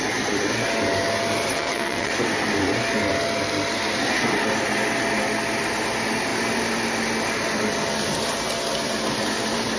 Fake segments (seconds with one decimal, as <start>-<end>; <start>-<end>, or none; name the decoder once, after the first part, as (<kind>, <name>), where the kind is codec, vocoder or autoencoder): 1.5-2.1 (vocoder, WaveNeXt)